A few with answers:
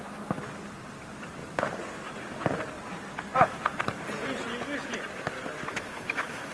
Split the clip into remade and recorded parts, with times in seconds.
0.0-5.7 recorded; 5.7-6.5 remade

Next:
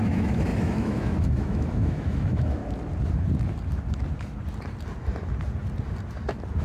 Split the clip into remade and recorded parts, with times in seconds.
0.0-2.6 remade; 2.6-6.6 recorded

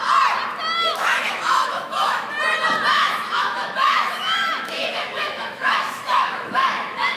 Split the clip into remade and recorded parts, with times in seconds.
0.0-0.8 recorded; 0.8-2.3 remade; 2.3-2.9 recorded; 2.9-7.2 remade

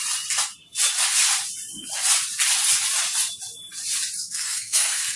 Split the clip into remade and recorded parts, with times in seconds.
0.0-4.2 recorded; 4.2-5.2 remade

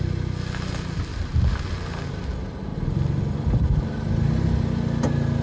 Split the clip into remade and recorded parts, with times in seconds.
0.0-2.7 recorded; 2.7-3.8 remade; 3.8-5.4 recorded

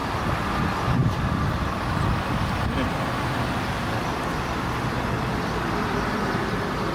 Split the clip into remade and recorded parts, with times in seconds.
0.0-6.9 recorded

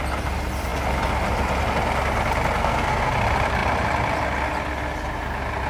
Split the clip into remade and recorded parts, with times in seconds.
0.0-2.6 recorded; 2.6-3.1 remade; 3.1-5.7 recorded